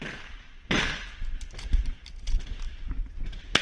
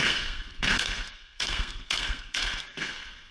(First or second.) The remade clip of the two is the second